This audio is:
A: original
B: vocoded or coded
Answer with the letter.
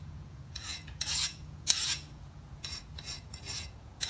B